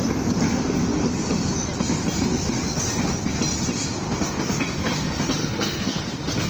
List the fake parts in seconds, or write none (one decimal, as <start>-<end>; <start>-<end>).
5.4-6.0